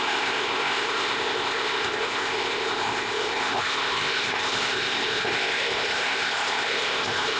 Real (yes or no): no